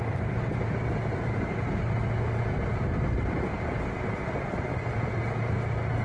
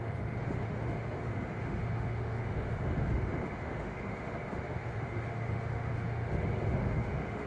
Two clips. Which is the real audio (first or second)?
first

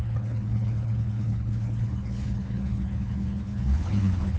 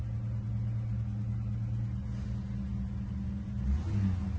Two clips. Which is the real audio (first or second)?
second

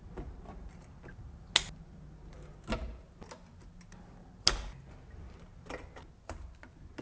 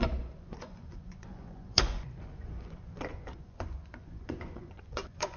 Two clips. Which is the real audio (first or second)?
first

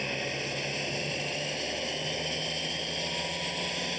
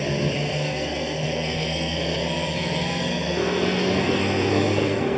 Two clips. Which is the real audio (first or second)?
first